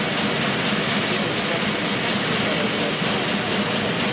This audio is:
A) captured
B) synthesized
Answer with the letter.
A